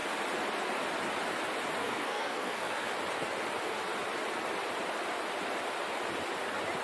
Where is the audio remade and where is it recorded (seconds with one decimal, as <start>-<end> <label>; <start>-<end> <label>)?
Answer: 0.0-1.8 recorded; 1.8-2.9 remade; 2.9-6.8 recorded